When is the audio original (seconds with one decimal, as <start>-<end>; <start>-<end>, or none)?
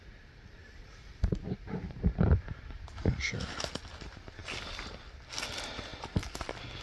0.0-0.6; 3.1-6.8